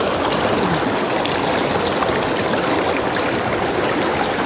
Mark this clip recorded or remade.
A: recorded